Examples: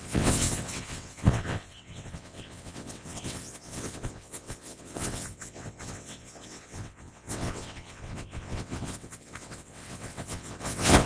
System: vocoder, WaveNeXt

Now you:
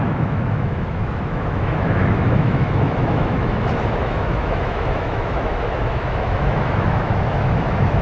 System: autoencoder, DAC-VAE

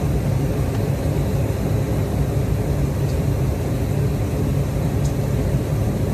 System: none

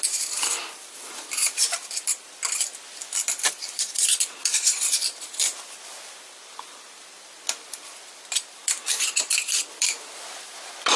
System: vocoder, BigVGAN v2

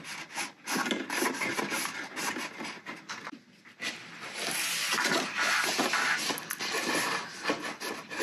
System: none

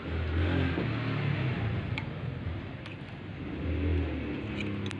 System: none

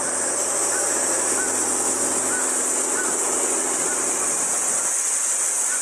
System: none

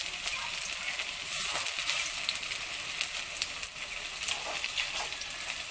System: none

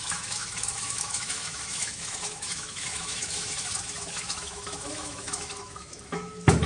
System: autoencoder, DAC-VAE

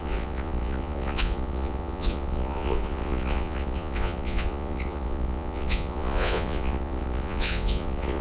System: vocoder, Vocos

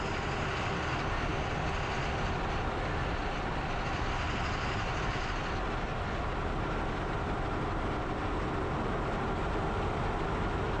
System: none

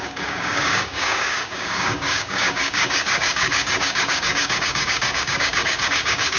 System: codec, DAC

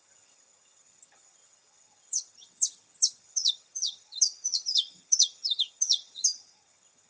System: vocoder, HiFi-GAN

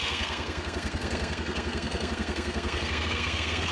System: codec, SNAC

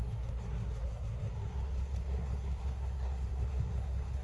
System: codec, SNAC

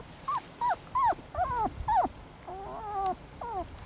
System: none